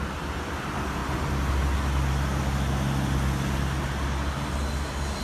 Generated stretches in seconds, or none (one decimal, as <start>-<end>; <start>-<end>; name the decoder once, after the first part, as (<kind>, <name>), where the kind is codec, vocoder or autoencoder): none